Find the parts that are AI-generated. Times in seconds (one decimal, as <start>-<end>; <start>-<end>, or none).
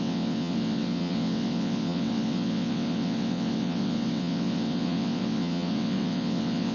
0.0-6.7